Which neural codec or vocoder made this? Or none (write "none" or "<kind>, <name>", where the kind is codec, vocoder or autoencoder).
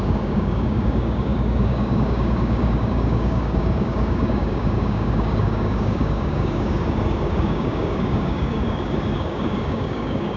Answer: codec, DAC